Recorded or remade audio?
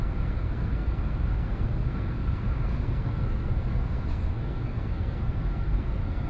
remade